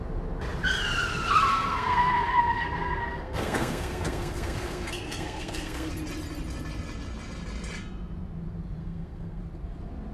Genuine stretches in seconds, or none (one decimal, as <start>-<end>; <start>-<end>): 0.0-1.5; 5.9-8.8; 9.4-10.1